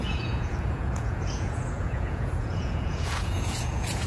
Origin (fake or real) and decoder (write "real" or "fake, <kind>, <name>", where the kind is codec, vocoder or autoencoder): fake, vocoder, Vocos